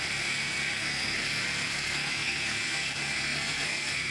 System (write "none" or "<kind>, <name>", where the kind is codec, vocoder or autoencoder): codec, SNAC